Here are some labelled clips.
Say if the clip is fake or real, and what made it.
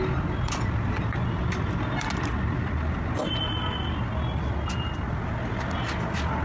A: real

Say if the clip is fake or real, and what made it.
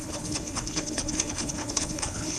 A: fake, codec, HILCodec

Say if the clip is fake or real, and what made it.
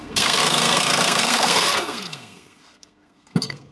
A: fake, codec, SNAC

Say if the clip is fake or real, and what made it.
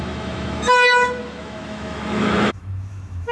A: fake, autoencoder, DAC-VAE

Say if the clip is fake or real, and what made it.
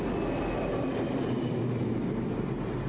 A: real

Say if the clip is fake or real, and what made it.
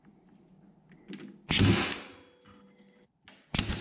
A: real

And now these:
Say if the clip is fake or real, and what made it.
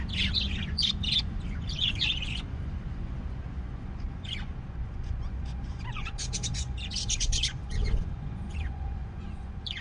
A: fake, vocoder, Vocos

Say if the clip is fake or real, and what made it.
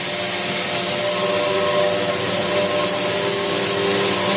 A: real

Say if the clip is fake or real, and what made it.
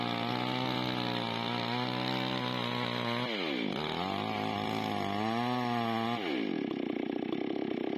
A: real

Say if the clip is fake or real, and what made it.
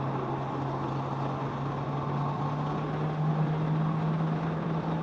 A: real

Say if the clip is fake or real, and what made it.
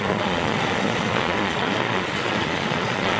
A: fake, vocoder, Vocos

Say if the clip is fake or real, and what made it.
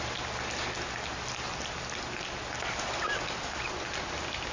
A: real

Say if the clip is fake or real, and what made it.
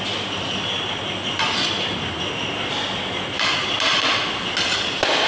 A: real